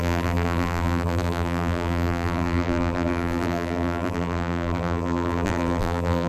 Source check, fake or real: fake